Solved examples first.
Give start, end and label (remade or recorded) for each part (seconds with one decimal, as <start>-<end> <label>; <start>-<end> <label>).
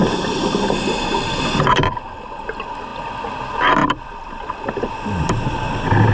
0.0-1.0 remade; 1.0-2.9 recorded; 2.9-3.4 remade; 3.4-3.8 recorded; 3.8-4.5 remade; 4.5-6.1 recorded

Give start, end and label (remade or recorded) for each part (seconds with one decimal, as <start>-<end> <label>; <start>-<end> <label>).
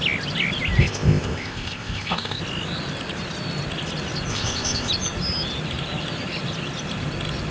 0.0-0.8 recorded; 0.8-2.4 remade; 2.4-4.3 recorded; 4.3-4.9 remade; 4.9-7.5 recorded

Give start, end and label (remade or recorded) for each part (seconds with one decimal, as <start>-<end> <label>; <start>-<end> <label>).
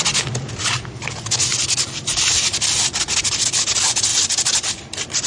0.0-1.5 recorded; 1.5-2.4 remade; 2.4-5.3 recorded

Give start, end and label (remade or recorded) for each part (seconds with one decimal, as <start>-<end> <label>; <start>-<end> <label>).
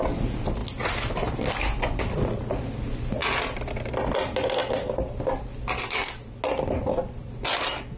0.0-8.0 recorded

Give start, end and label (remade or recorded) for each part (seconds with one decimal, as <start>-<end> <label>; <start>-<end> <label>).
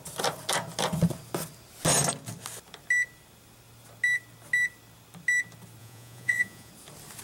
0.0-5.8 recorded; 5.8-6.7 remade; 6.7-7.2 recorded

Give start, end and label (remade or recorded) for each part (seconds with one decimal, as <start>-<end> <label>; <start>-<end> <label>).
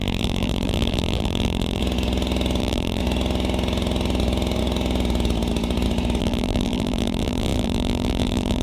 0.0-1.8 remade; 1.8-2.6 recorded; 2.6-3.0 remade; 3.0-6.2 recorded; 6.2-8.6 remade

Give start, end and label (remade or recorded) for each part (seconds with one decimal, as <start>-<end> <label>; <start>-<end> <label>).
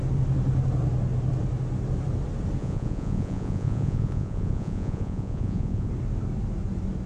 0.0-2.6 recorded; 2.6-5.9 remade; 5.9-7.1 recorded